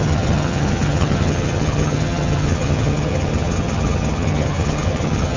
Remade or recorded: remade